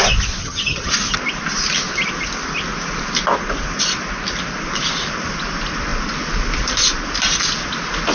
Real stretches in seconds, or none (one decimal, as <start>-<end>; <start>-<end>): 0.0-0.4; 0.9-8.1